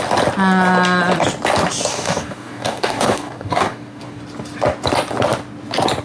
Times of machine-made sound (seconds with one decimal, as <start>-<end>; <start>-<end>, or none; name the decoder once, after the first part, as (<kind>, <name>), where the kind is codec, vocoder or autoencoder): 1.9-4.2 (codec, DAC)